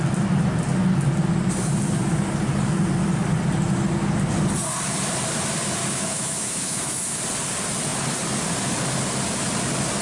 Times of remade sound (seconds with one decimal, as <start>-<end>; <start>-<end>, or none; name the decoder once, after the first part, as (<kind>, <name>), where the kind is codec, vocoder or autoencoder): 5.8-7.2 (autoencoder, DAC-VAE)